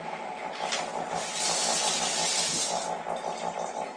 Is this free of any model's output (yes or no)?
yes